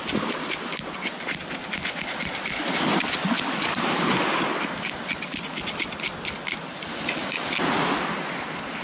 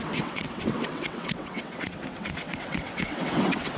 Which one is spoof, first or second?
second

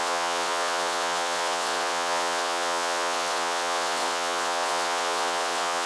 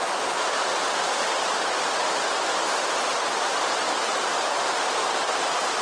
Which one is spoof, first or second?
first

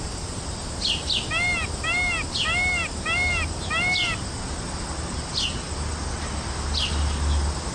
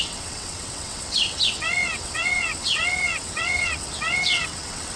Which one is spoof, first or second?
second